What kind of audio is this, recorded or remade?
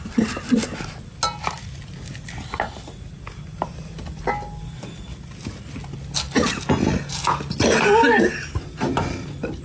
recorded